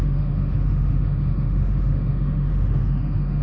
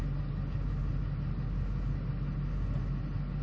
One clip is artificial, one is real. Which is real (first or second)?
second